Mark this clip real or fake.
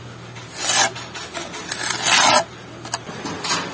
real